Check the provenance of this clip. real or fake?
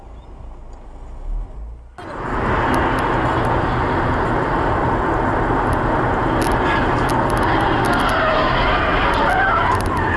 real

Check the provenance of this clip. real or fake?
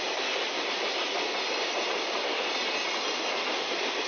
real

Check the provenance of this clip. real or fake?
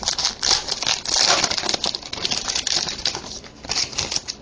real